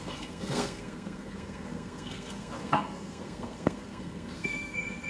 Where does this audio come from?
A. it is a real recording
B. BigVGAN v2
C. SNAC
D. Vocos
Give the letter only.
C